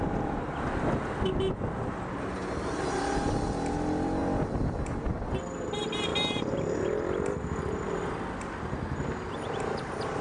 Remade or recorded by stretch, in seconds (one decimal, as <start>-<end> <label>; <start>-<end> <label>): 0.0-10.2 recorded